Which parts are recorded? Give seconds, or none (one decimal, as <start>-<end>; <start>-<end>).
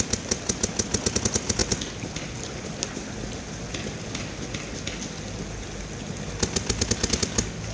0.0-7.7